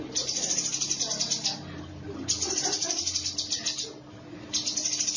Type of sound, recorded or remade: recorded